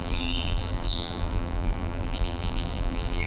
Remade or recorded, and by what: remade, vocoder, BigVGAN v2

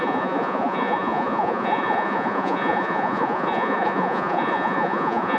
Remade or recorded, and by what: remade, vocoder, Vocos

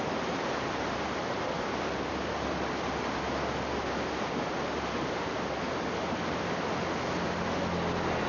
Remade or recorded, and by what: recorded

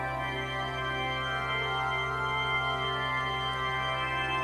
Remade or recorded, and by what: recorded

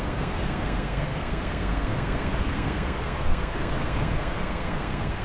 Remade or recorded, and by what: remade, codec, SNAC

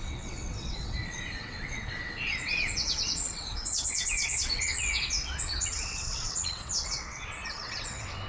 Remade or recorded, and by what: remade, vocoder, WaveNeXt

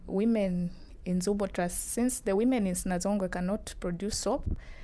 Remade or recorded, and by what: remade, vocoder, BigVGAN v2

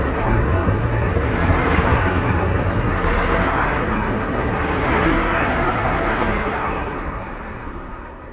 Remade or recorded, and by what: remade, codec, SNAC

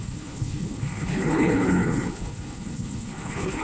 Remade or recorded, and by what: remade, codec, HILCodec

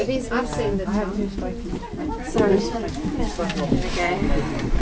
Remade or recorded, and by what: recorded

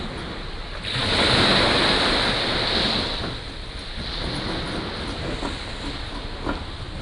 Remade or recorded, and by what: recorded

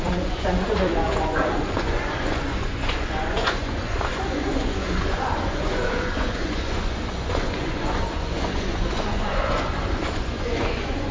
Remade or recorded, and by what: remade, vocoder, Vocos